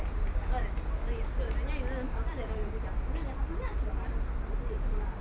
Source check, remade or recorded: recorded